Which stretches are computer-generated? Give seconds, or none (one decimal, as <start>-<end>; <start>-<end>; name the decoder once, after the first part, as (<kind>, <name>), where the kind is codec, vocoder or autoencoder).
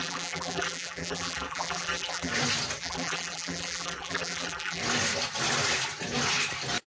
0.0-2.3 (vocoder, BigVGAN v2); 2.8-4.8